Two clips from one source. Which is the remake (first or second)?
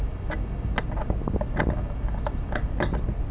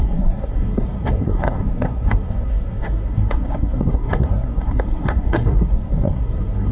second